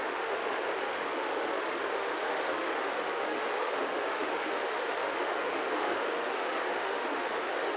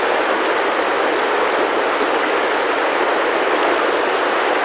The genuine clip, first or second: second